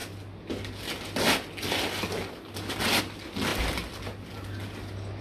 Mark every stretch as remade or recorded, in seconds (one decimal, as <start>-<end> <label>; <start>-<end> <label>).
0.0-5.2 recorded